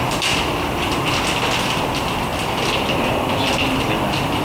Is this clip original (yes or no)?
no